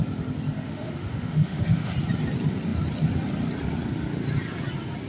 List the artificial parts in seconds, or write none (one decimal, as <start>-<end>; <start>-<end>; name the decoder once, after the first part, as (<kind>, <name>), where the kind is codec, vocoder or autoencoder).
0.5-1.9 (autoencoder, DAC-VAE)